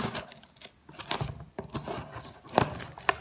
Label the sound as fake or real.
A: real